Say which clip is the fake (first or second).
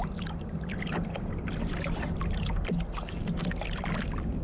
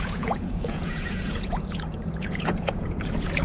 second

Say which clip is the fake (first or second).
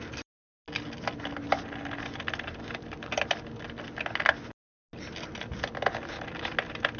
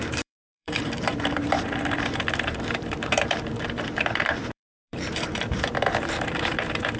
second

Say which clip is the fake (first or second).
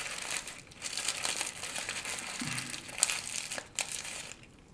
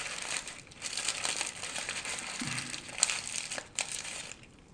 second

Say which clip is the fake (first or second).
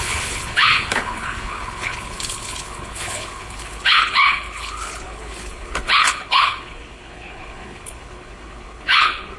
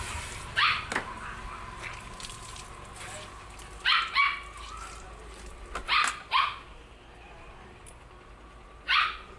first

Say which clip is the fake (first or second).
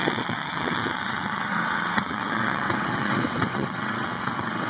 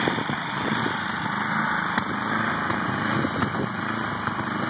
first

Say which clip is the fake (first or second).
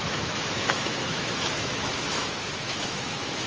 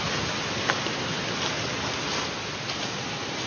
first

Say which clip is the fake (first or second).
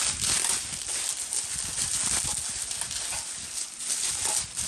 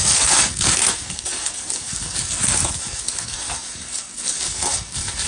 second